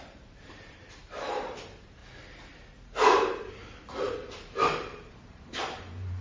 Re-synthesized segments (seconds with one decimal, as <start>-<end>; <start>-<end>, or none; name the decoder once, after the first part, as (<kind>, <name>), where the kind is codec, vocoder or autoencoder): 0.0-2.0 (vocoder, BigVGAN v2); 3.9-6.2